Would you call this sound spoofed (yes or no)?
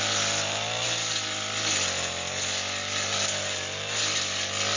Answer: no